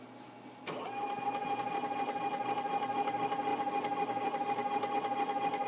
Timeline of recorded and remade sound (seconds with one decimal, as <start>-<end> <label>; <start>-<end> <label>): 0.0-3.5 recorded; 3.5-4.9 remade; 4.9-5.7 recorded